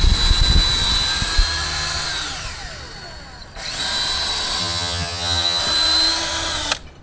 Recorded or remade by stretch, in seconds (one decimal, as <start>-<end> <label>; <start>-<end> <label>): 0.0-4.6 recorded; 4.6-5.6 remade; 5.6-7.0 recorded